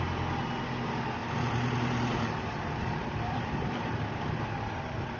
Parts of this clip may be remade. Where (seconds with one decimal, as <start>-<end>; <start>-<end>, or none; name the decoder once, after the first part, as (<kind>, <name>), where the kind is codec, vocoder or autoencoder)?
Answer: 1.2-4.3 (vocoder, BigVGAN v2)

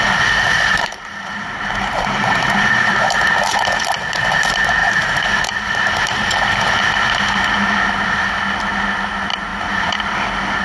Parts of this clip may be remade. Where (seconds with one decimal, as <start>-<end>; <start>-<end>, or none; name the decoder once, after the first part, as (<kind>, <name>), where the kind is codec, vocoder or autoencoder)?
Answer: 0.5-2.9 (vocoder, BigVGAN v2); 4.8-7.4; 9.5-10.0

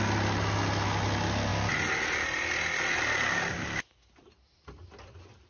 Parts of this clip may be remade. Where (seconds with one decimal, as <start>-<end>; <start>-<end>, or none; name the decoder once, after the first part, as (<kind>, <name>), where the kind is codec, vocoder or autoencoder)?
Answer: none